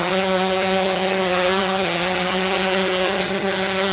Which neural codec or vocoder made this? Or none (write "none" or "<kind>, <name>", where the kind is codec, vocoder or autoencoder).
vocoder, HiFi-GAN